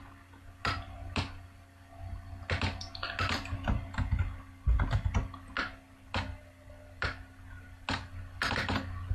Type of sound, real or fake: real